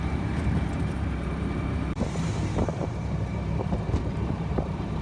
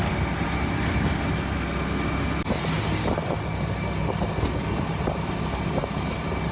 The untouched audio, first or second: second